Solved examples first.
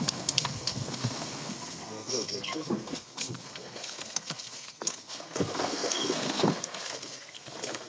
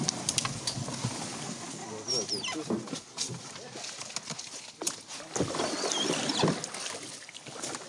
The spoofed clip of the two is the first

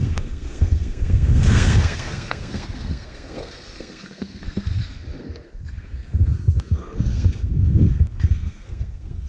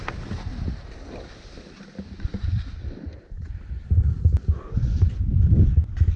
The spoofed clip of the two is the first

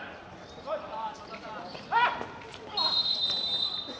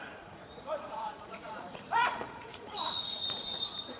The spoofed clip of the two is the second